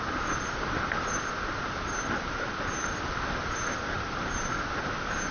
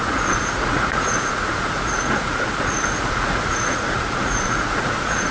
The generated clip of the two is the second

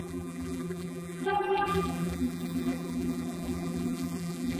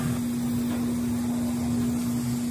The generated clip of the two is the first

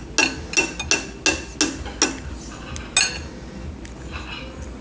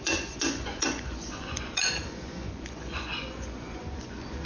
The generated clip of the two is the second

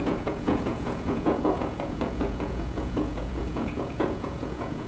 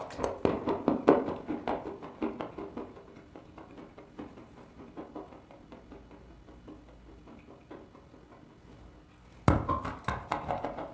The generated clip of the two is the first